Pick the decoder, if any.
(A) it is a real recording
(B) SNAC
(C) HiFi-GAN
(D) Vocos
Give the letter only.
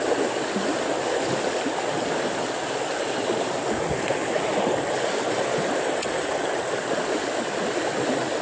A